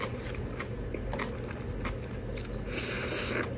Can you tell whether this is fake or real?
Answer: real